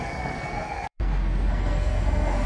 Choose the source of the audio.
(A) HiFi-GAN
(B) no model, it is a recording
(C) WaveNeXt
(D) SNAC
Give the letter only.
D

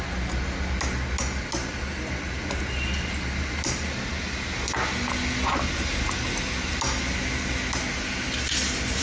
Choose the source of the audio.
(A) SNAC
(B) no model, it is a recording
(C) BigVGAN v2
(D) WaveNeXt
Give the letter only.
B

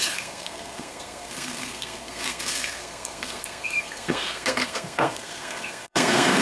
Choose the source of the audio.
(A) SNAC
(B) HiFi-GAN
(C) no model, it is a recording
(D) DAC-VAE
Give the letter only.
A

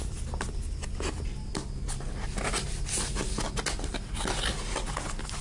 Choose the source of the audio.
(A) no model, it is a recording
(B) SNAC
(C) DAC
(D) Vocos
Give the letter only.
A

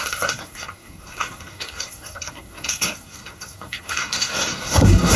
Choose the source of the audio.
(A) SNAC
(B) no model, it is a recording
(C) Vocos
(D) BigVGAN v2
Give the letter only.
A